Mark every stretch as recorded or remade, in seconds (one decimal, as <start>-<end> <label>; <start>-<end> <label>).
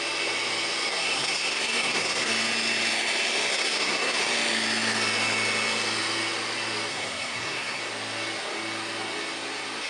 0.0-0.9 recorded; 0.9-2.3 remade; 2.3-3.5 recorded; 3.5-4.2 remade; 4.2-6.9 recorded; 6.9-7.8 remade; 7.8-9.9 recorded